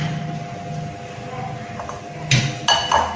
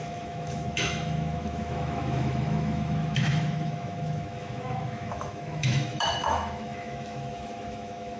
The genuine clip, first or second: first